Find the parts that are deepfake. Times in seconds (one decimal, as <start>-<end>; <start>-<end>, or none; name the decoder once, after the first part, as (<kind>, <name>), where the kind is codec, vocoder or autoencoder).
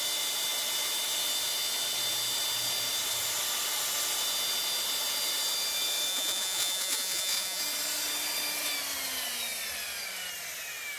6.1-7.6 (vocoder, Vocos)